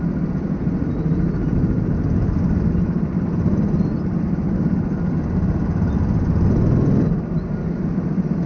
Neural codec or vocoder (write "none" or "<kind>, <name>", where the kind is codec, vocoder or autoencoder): none